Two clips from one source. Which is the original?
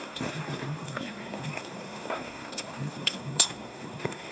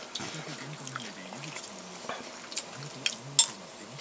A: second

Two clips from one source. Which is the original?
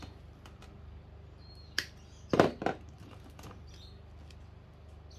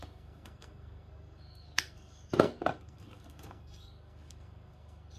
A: first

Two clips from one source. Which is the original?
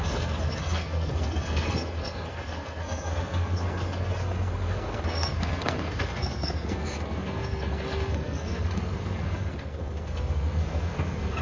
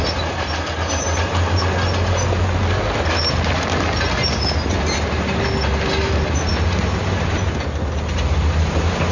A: second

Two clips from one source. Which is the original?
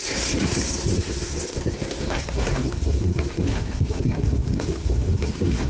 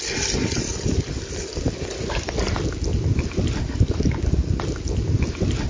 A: second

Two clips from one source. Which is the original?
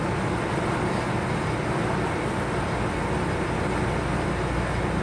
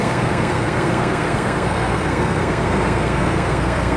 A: first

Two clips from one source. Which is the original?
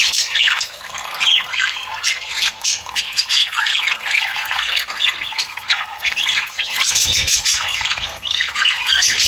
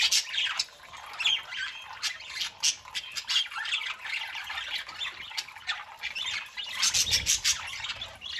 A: second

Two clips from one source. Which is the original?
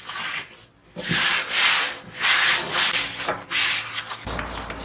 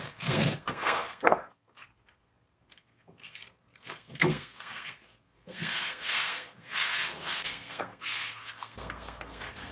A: first